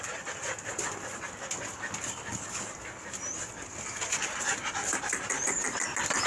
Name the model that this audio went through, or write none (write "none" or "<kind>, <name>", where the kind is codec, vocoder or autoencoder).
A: none